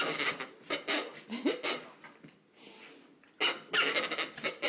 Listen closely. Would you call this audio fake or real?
real